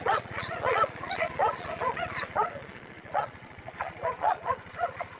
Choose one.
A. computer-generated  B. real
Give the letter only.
A